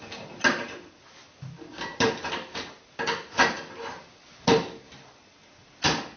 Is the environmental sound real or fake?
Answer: real